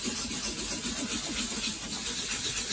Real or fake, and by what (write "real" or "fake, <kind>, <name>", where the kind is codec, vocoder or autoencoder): real